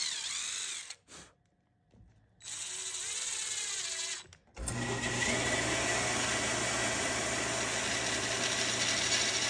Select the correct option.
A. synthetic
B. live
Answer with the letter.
B